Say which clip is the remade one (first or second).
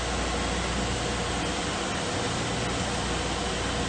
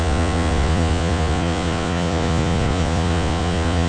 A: second